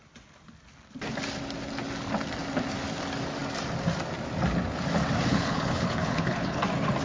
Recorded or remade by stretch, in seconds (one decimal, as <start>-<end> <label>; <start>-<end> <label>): 0.0-5.3 recorded; 5.3-6.6 remade; 6.6-7.0 recorded